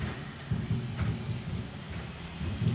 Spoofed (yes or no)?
no